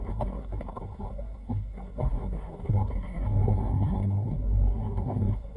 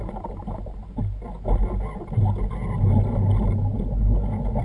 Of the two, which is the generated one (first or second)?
first